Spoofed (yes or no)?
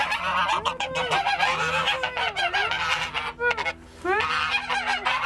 no